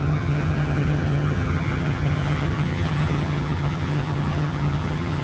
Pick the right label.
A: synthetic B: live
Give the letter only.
A